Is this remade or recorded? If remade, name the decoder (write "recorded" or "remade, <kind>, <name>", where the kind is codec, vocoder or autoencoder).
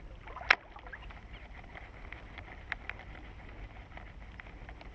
recorded